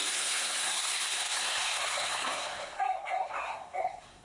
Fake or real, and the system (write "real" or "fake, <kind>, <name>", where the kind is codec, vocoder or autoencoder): fake, codec, SNAC